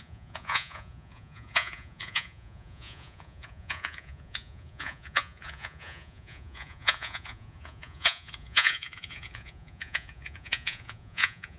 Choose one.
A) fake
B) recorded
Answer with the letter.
A